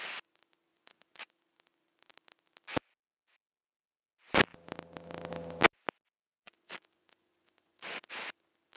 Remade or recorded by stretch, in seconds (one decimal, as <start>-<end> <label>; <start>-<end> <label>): 0.0-0.7 recorded; 0.7-1.3 remade; 1.3-6.2 recorded; 6.2-8.1 remade; 8.1-8.8 recorded